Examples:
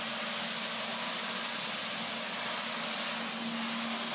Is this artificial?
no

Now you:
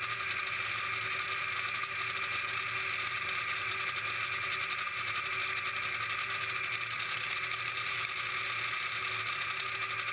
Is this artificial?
no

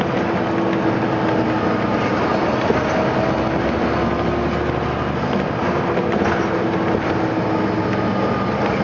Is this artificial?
no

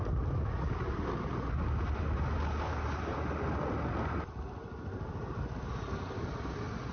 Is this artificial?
no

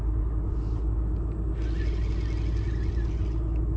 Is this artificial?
no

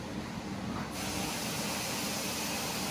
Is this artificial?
no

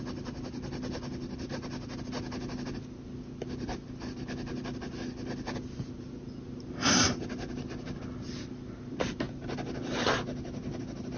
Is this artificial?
no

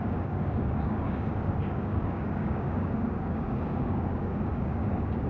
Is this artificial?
yes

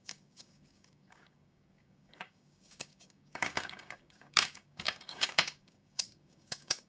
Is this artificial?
yes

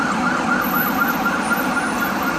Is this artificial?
no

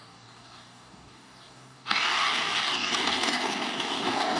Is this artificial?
yes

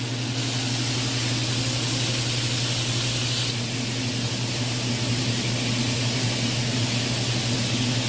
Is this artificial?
no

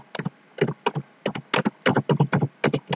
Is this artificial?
no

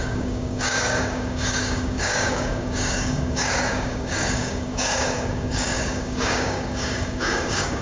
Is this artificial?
yes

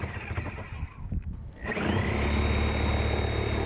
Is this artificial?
no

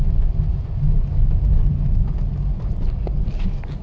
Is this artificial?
no